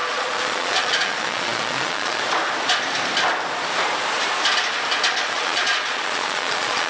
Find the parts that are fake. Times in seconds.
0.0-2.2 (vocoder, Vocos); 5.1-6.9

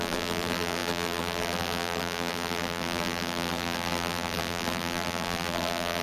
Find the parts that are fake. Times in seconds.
0.0-6.0 (vocoder, BigVGAN v2)

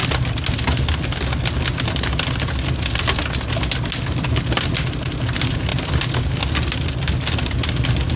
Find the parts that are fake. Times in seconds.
none

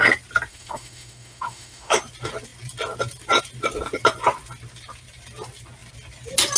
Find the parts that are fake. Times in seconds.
0.5-2.0 (autoencoder, DAC-VAE)

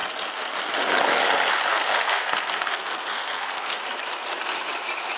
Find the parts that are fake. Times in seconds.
1.7-3.8 (codec, SNAC)

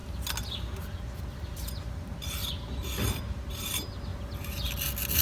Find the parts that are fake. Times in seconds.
none